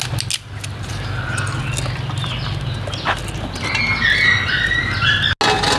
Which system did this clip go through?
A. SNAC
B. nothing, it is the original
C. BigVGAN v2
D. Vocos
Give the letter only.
B